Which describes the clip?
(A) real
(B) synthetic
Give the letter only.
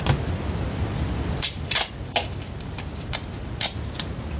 A